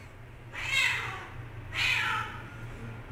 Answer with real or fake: real